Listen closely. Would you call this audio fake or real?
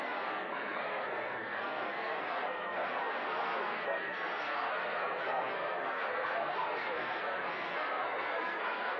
fake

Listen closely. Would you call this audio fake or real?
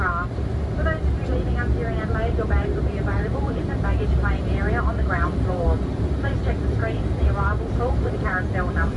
fake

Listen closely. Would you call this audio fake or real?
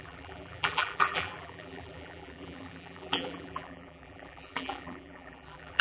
fake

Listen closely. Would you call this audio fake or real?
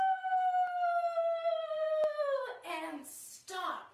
real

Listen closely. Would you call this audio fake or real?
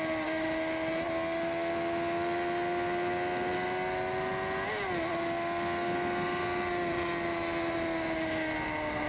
real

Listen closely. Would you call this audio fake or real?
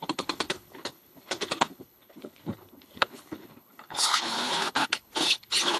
fake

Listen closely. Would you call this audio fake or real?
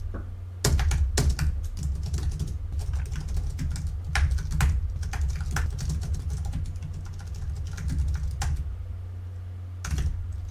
real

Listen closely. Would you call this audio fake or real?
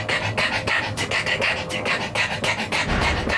real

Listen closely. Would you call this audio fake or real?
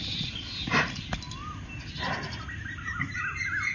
real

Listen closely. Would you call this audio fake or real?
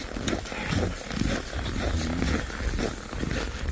real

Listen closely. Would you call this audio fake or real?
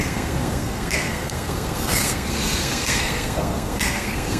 fake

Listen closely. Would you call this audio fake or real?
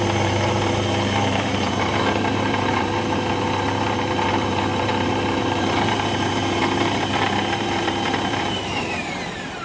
fake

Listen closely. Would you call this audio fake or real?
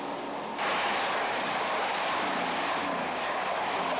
real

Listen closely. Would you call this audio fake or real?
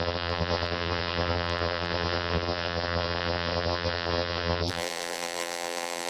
fake